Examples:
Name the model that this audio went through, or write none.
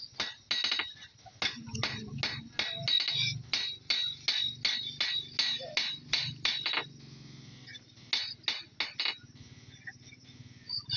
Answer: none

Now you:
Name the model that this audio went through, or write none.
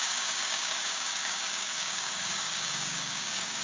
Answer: codec, DAC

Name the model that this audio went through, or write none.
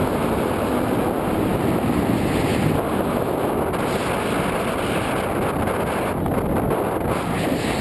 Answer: none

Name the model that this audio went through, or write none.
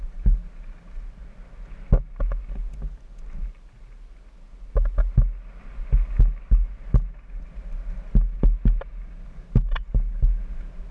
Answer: none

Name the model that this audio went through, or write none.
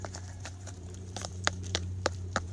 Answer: vocoder, BigVGAN v2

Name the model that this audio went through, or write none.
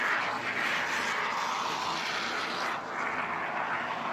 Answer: none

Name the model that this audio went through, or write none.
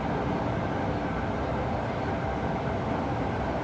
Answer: none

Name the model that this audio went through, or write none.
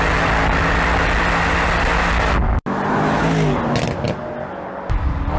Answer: none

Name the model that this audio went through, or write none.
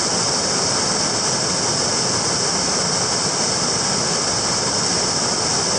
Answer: none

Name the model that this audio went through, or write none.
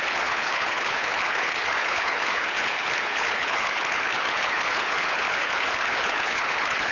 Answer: codec, HILCodec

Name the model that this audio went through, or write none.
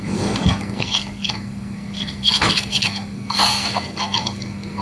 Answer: codec, SNAC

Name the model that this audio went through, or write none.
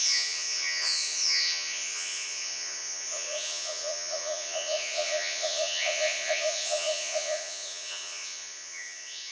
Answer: vocoder, Vocos